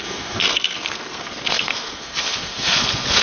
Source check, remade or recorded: remade